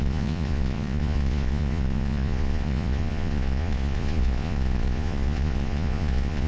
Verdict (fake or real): fake